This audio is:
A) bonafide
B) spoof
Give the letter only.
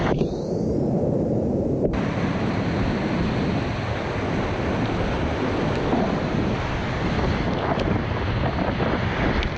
A